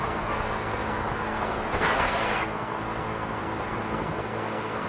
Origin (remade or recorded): remade